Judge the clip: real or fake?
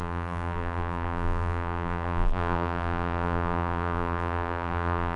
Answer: fake